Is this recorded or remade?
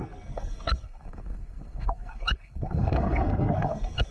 remade